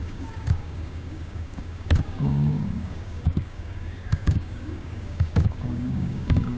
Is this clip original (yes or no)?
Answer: no